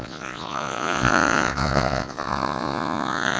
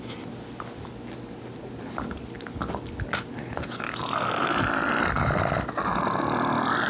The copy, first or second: first